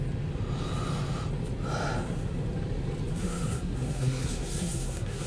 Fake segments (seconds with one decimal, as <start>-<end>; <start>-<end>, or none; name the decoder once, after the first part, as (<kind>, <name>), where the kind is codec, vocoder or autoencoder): 3.1-5.3 (codec, SNAC)